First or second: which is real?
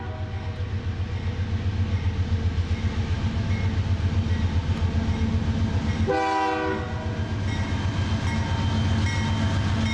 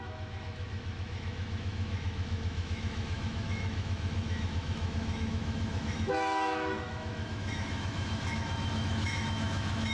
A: first